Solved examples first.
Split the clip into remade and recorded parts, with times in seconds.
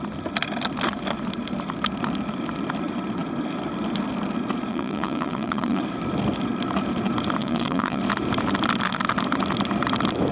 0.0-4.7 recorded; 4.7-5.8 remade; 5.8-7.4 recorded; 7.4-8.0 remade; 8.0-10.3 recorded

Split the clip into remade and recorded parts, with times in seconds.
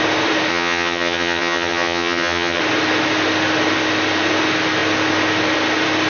0.0-0.5 recorded; 0.5-2.6 remade; 2.6-6.1 recorded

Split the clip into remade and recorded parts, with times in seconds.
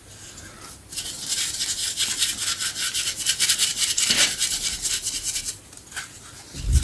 0.0-6.8 recorded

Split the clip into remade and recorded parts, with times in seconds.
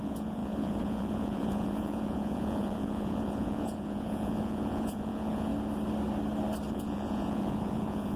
0.0-5.5 remade; 5.5-6.7 recorded; 6.7-8.2 remade